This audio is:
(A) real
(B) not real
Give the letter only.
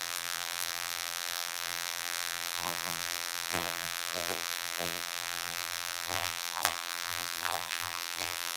B